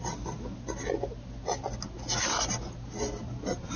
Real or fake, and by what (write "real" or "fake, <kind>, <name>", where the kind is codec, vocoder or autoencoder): real